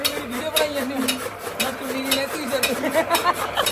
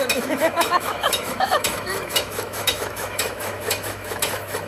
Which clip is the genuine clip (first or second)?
first